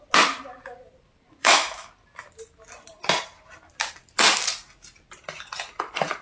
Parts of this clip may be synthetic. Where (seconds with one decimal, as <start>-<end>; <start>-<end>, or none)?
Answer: 1.4-1.9